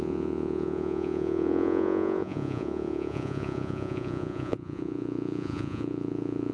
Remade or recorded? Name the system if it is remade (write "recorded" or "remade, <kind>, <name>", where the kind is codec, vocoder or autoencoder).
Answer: remade, vocoder, Vocos